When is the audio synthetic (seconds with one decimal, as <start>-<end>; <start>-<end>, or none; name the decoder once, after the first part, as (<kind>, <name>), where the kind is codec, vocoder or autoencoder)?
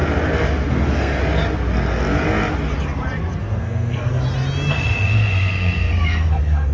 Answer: 0.7-1.2 (codec, SNAC); 3.4-4.1; 4.7-6.7